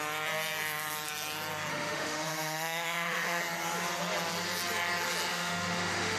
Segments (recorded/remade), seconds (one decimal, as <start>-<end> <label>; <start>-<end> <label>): 0.0-1.7 recorded; 1.7-3.4 remade; 3.4-5.3 recorded; 5.3-6.2 remade